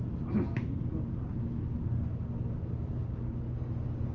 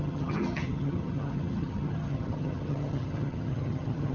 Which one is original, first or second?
first